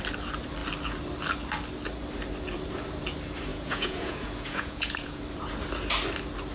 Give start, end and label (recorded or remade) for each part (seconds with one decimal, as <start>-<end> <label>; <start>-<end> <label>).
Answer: 0.0-3.5 recorded; 3.5-5.2 remade; 5.2-6.5 recorded